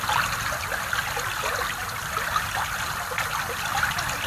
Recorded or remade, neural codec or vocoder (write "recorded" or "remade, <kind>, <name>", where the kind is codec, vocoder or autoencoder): recorded